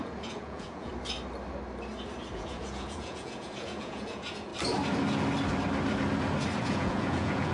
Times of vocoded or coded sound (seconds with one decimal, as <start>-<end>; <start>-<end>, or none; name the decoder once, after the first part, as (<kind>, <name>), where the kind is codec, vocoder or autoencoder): 0.0-0.9 (vocoder, Vocos); 2.3-4.5; 6.6-7.5